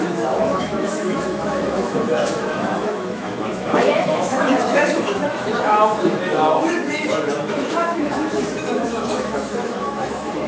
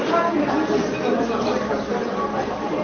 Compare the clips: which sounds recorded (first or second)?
second